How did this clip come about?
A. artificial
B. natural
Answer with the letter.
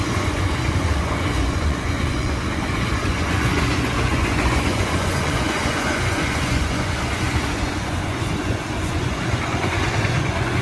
A